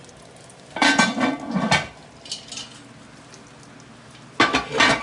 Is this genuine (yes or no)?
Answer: yes